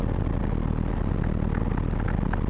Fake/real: real